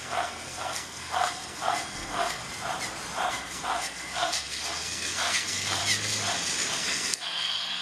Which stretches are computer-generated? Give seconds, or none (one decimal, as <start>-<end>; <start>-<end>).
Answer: 0.0-2.4; 3.3-5.8; 6.7-7.8